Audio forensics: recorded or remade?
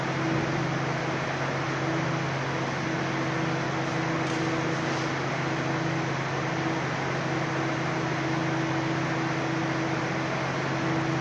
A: recorded